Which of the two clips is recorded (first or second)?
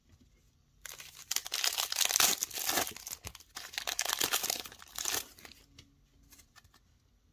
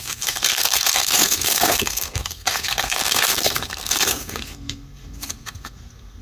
first